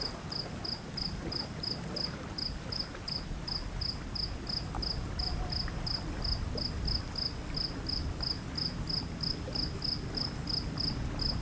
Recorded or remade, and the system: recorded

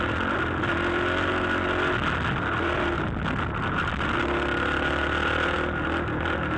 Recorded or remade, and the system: recorded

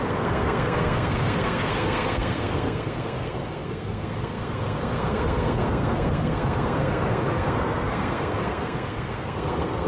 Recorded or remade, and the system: remade, codec, SNAC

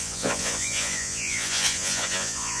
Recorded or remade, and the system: remade, vocoder, Vocos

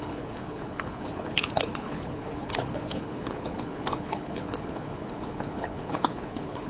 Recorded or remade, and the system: remade, codec, HILCodec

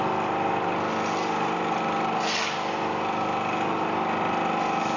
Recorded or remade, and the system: recorded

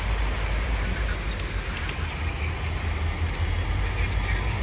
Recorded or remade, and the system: recorded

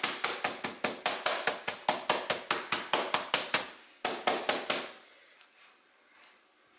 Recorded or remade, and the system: recorded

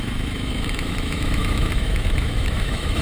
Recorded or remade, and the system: remade, autoencoder, DAC-VAE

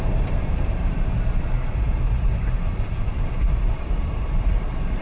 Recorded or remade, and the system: remade, vocoder, BigVGAN v2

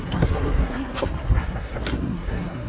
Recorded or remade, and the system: remade, codec, SNAC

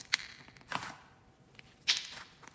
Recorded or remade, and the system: recorded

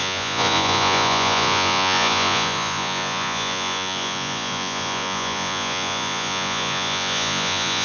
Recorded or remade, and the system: remade, vocoder, Vocos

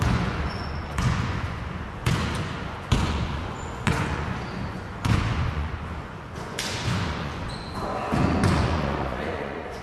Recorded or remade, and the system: remade, vocoder, Vocos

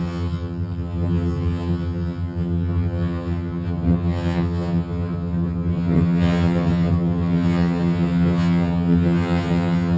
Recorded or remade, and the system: remade, vocoder, HiFi-GAN